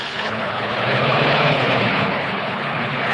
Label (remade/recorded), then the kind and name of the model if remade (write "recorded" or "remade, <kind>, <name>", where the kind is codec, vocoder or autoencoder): remade, codec, HILCodec